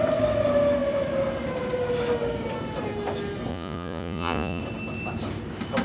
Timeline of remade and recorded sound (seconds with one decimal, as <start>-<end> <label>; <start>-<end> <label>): 0.0-3.5 recorded; 3.5-4.6 remade; 4.6-5.8 recorded